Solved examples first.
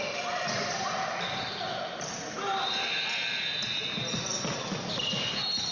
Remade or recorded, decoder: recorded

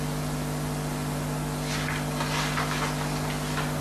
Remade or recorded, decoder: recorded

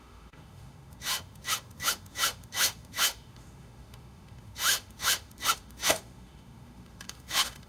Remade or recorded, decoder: remade, autoencoder, DAC-VAE